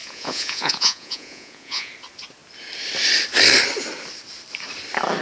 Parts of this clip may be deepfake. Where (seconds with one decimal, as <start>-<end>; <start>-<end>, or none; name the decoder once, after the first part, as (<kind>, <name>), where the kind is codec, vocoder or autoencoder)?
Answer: 0.0-1.9 (vocoder, Vocos)